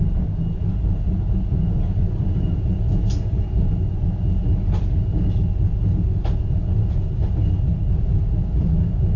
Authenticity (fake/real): real